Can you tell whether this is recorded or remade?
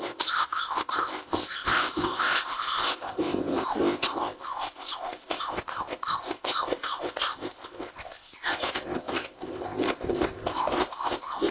remade